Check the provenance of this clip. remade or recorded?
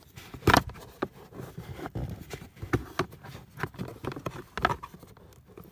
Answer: recorded